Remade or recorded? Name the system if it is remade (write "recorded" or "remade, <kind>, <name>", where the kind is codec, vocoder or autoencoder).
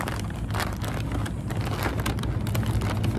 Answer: recorded